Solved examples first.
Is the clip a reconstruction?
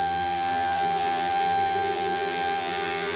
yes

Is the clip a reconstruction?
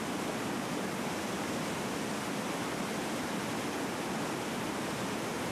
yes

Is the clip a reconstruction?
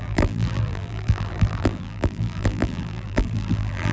yes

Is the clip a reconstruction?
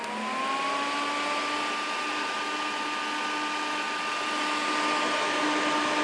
no